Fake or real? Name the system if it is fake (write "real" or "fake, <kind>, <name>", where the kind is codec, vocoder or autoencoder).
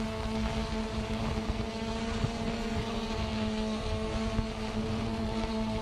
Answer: fake, codec, SNAC